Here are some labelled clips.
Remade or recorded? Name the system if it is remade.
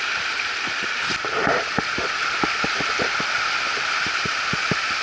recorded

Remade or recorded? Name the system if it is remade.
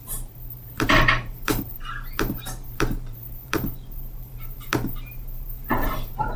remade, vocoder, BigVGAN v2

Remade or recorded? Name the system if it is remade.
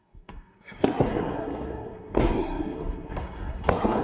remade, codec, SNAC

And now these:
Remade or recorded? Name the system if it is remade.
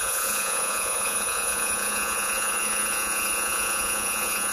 remade, vocoder, Vocos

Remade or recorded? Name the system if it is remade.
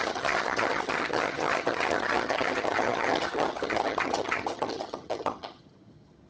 remade, vocoder, HiFi-GAN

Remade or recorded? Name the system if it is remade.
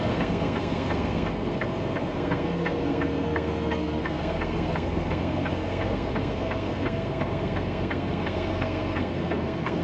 remade, codec, SNAC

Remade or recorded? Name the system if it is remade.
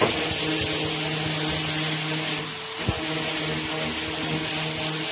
recorded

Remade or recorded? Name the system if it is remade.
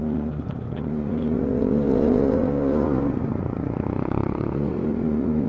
remade, vocoder, Vocos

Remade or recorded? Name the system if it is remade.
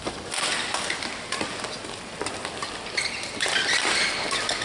recorded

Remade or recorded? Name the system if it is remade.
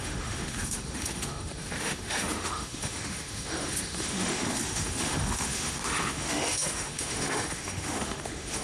remade, autoencoder, DAC-VAE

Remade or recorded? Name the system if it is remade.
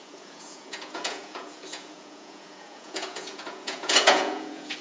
remade, vocoder, Vocos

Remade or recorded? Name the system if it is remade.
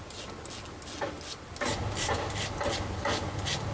recorded